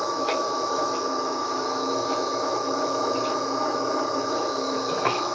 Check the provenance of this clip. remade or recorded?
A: remade